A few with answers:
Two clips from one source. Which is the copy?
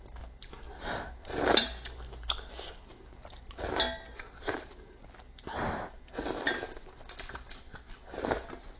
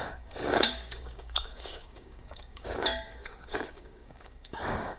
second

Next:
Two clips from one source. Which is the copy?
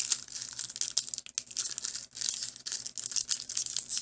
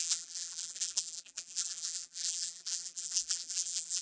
second